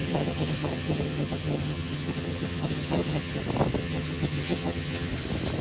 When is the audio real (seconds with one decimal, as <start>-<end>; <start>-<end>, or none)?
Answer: 3.4-3.8; 5.1-5.6